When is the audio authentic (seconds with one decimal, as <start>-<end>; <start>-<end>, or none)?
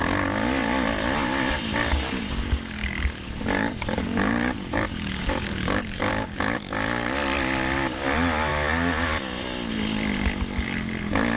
0.0-1.9; 6.1-11.4